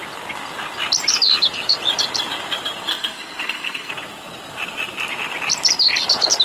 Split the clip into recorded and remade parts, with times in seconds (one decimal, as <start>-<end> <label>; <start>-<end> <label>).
0.0-2.9 recorded; 2.9-3.9 remade; 3.9-6.4 recorded

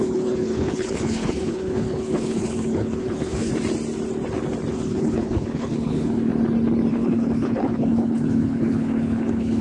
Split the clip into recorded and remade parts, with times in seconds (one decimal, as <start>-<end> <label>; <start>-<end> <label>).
0.0-3.5 remade; 3.5-4.7 recorded; 4.7-6.3 remade; 6.3-6.9 recorded; 6.9-9.6 remade

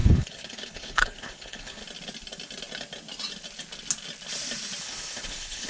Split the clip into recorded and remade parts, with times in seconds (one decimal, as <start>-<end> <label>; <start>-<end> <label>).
0.0-1.8 remade; 1.8-4.8 recorded; 4.8-5.7 remade

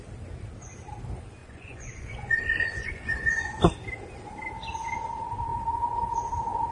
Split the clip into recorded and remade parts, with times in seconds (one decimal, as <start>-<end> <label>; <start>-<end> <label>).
0.0-1.4 recorded; 1.4-3.6 remade; 3.6-6.7 recorded

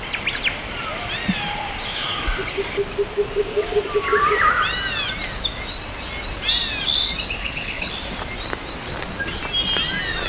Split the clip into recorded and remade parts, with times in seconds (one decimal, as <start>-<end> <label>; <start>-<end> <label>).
0.0-7.4 recorded; 7.4-7.9 remade; 7.9-10.3 recorded

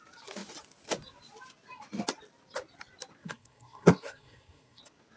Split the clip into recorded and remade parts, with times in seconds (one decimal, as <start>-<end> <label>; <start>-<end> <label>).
0.0-3.2 recorded; 3.2-4.8 remade; 4.8-5.2 recorded

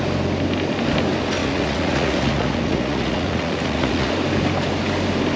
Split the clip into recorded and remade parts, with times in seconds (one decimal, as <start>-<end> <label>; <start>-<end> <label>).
0.0-1.4 recorded; 1.4-4.1 remade; 4.1-5.4 recorded

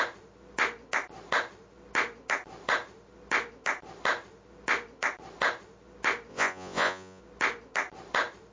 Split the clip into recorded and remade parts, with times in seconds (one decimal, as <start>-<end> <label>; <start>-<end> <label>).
0.0-6.3 recorded; 6.3-7.2 remade; 7.2-8.5 recorded